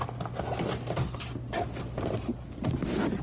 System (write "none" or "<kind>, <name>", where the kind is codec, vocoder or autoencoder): none